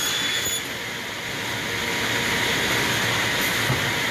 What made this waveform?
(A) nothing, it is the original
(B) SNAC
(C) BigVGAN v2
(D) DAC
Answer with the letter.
A